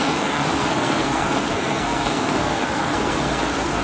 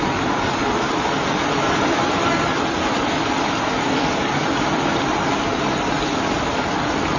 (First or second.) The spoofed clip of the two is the first